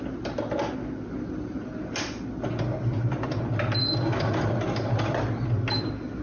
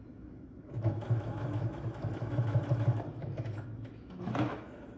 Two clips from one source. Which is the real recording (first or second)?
first